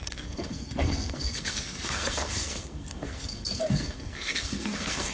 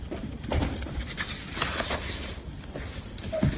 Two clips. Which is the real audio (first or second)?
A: second